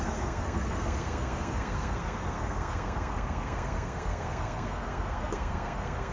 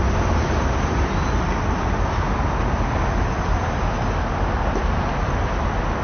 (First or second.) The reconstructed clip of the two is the first